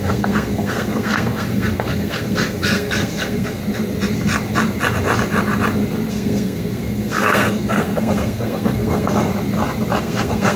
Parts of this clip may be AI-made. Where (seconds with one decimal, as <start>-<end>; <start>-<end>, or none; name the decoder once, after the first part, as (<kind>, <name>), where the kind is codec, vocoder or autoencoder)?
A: 0.0-3.6 (codec, SNAC); 6.1-9.3; 10.0-10.6